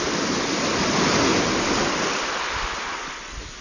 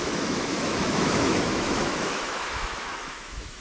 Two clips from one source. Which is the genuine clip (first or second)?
first